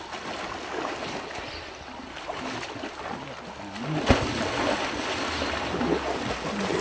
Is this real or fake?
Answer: real